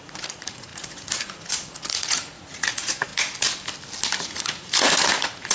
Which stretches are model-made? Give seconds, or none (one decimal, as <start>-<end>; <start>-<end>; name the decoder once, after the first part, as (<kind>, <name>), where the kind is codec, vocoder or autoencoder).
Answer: 0.0-3.1 (vocoder, Vocos); 4.2-5.5